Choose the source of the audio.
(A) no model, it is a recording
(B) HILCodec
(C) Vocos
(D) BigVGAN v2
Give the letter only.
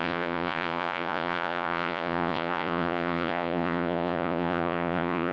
C